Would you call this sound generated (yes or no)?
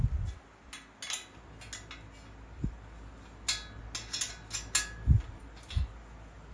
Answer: no